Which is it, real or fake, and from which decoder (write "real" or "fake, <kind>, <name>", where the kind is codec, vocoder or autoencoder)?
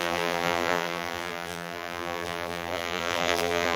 fake, vocoder, BigVGAN v2